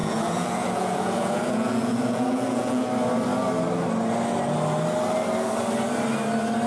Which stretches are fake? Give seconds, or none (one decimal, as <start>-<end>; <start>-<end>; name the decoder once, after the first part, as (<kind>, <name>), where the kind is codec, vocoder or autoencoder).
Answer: 0.0-2.9 (vocoder, Vocos)